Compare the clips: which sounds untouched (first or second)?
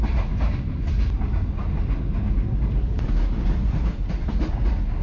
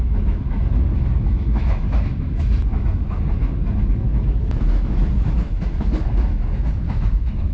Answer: first